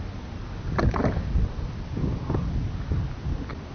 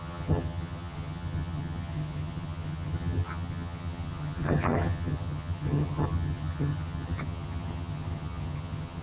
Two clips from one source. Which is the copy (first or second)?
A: second